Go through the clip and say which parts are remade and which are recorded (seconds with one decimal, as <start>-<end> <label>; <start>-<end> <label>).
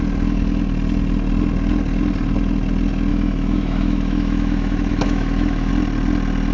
0.0-3.1 recorded; 3.1-5.7 remade; 5.7-6.5 recorded